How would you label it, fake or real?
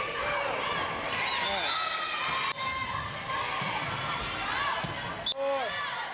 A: real